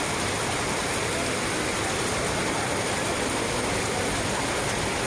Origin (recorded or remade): recorded